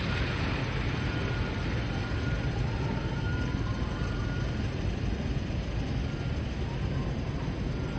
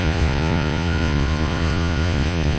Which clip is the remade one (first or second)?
second